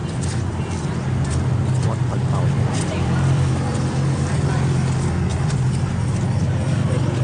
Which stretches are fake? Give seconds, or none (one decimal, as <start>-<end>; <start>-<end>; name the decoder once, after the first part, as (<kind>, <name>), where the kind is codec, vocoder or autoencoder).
0.0-0.6 (vocoder, BigVGAN v2); 2.1-3.5; 5.3-5.9